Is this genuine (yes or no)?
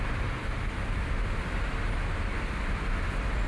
yes